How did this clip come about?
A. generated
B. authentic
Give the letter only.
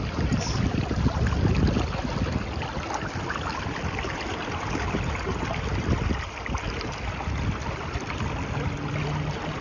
B